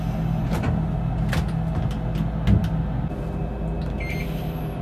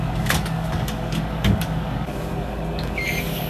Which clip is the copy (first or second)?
second